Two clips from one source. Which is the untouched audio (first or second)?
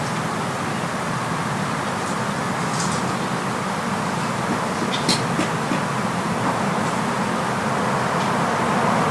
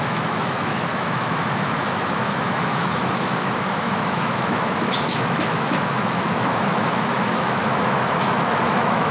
first